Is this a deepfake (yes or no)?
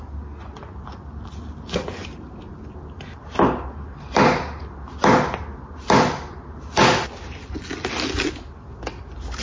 no